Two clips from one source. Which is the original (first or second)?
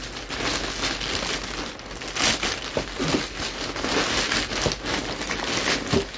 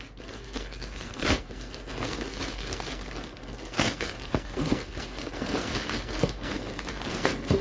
first